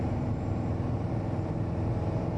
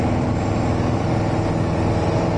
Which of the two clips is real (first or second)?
second